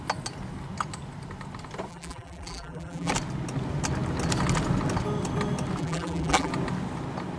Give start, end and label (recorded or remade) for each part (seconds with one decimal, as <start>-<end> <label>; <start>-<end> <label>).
0.0-1.9 recorded; 1.9-3.1 remade; 3.1-5.8 recorded; 5.8-6.5 remade; 6.5-7.4 recorded